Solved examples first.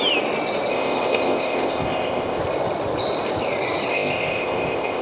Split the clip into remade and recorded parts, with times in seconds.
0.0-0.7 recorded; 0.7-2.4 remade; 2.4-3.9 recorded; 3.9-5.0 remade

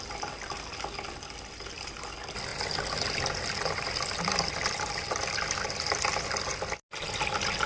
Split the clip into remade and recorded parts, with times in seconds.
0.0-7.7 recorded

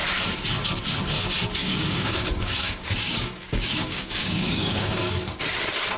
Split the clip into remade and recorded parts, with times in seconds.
0.0-1.6 recorded; 1.6-5.2 remade; 5.2-6.0 recorded

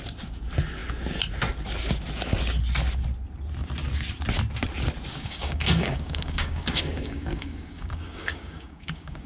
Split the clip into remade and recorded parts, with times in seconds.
0.0-5.1 recorded; 5.1-9.3 remade

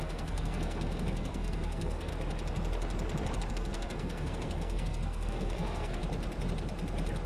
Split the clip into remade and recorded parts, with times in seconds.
0.0-2.1 remade; 2.1-3.5 recorded; 3.5-6.0 remade; 6.0-7.3 recorded

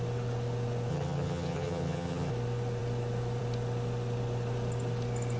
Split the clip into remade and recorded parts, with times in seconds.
0.0-0.9 recorded; 0.9-2.3 remade; 2.3-5.4 recorded